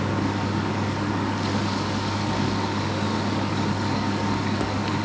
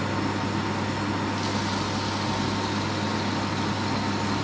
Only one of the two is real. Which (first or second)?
second